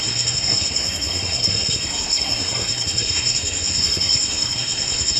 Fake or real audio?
fake